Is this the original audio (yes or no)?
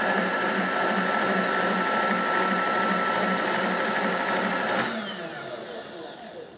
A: yes